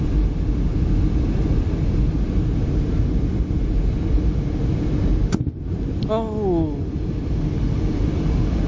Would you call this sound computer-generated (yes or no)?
no